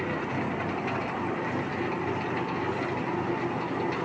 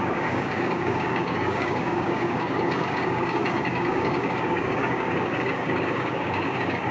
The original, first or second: first